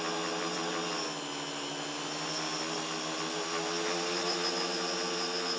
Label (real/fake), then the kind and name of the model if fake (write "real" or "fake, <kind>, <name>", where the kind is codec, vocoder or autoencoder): real